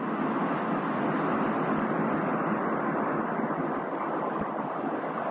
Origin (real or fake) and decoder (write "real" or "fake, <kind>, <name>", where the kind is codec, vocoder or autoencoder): real